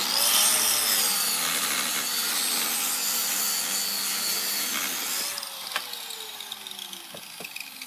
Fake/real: real